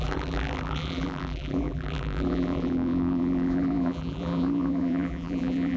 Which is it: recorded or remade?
remade